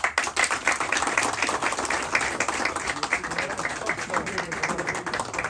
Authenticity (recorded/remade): recorded